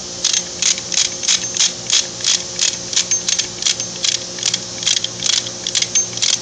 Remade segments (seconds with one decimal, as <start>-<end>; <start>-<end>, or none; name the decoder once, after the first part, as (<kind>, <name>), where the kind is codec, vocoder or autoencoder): none